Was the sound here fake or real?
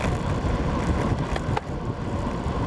real